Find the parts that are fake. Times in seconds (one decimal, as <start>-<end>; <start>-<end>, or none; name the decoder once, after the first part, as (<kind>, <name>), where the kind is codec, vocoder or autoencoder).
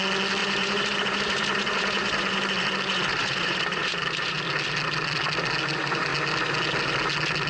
0.4-4.4 (vocoder, BigVGAN v2)